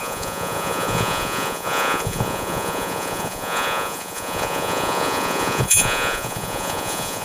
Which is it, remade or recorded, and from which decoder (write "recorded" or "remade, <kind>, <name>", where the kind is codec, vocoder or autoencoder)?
remade, vocoder, Vocos